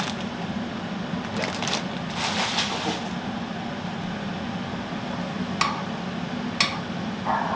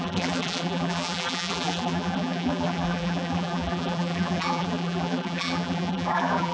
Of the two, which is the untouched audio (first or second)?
first